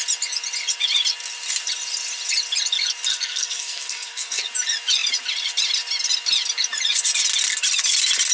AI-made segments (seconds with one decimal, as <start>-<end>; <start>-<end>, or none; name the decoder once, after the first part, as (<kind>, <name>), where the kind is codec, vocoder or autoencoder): 3.1-4.4 (codec, SNAC)